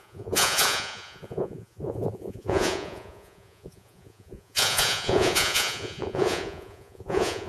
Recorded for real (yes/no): no